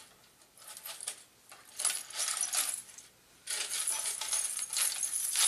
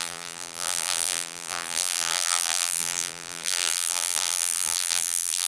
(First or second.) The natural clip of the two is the first